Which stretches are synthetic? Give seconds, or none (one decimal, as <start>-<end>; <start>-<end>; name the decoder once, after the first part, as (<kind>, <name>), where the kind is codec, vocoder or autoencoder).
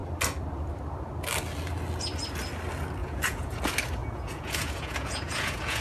3.0-3.6 (vocoder, Vocos); 4.0-5.8